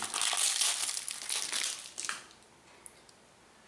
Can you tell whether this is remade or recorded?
recorded